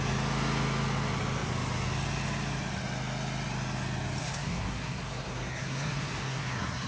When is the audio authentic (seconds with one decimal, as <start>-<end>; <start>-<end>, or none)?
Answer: 0.0-4.2